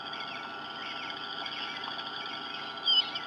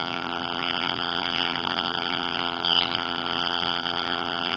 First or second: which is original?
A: first